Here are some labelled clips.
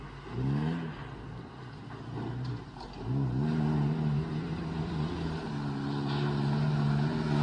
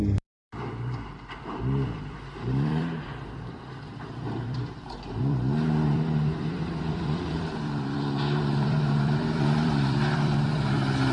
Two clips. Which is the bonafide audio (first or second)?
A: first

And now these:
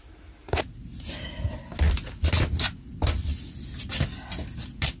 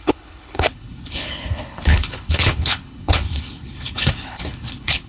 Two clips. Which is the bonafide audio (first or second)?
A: first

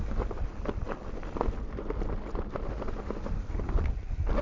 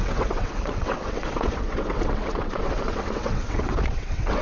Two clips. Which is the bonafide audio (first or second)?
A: first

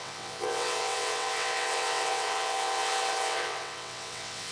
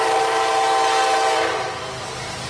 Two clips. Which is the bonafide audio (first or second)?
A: second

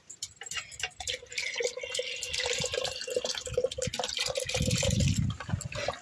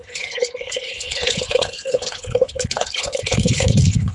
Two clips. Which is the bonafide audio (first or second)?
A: first